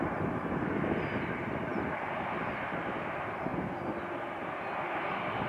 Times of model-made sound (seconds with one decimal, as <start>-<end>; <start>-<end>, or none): none